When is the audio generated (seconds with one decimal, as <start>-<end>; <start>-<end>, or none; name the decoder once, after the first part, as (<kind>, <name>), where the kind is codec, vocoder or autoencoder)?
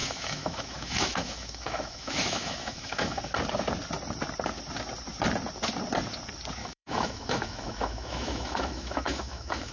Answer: 0.0-3.2 (autoencoder, DAC-VAE); 6.6-9.7